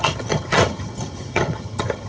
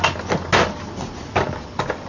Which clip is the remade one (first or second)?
first